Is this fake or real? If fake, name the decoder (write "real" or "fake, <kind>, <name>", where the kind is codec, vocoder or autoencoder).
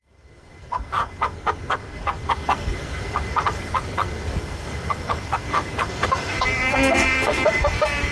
fake, codec, SNAC